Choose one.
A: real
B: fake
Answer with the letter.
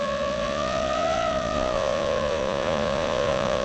B